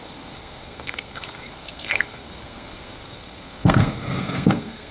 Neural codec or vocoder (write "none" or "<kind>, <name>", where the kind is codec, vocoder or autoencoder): codec, SNAC